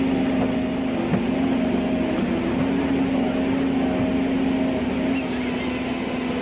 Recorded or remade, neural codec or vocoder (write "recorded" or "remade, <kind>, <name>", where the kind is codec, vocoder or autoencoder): recorded